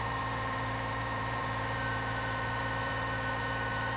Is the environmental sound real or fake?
fake